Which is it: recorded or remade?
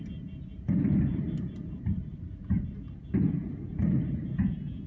remade